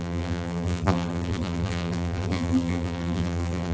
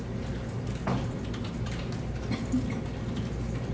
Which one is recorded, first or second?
second